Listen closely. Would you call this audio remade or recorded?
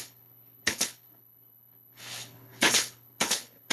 remade